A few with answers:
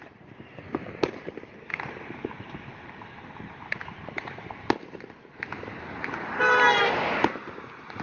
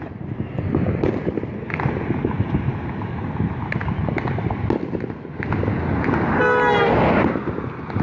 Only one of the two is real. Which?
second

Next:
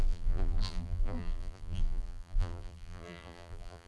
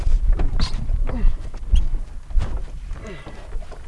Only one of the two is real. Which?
second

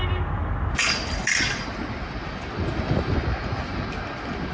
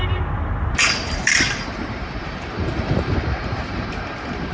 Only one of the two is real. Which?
first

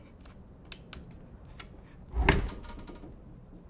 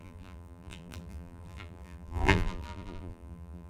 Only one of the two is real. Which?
first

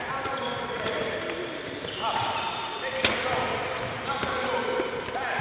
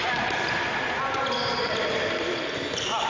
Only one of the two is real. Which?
first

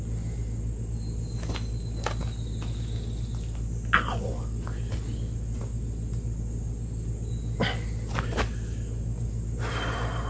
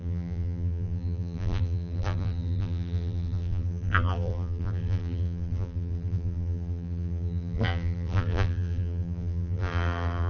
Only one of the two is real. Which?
first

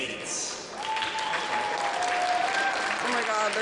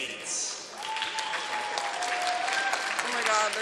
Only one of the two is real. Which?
second